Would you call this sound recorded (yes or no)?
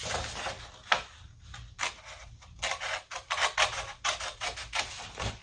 yes